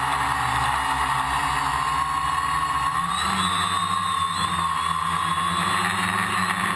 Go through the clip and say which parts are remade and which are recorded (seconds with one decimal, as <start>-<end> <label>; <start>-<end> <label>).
0.0-6.8 recorded